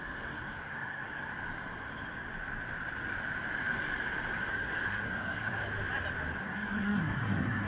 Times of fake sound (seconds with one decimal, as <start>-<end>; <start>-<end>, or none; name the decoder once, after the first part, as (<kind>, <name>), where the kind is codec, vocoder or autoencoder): 0.0-1.3 (codec, SNAC); 4.5-5.6; 6.4-7.7